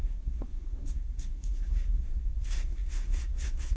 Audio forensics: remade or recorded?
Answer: remade